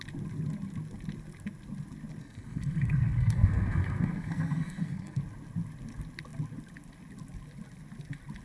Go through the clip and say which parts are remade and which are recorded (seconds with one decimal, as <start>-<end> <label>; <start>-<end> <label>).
0.0-2.2 recorded; 2.2-5.2 remade; 5.2-8.4 recorded